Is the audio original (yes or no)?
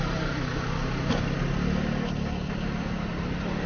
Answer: yes